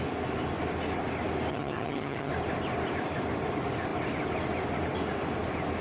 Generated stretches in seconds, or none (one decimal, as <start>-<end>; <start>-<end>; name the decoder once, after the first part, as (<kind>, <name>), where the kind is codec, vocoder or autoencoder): 1.5-2.3 (vocoder, HiFi-GAN)